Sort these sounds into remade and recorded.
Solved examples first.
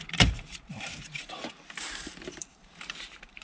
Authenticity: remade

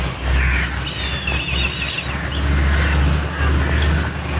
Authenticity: recorded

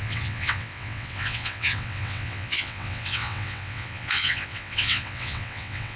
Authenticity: remade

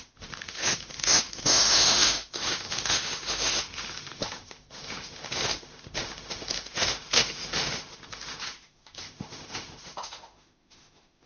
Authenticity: remade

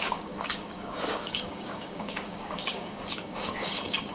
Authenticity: remade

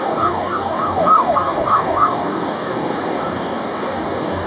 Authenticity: remade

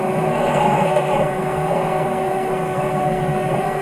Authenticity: remade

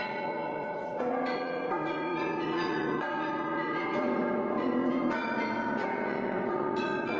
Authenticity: remade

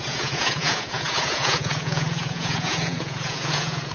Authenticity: remade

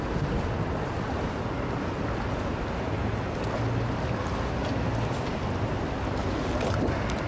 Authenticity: recorded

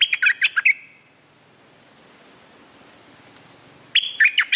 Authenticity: recorded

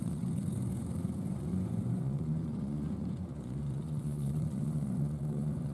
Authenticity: remade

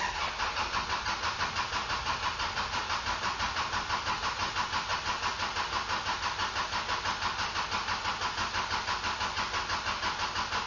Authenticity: recorded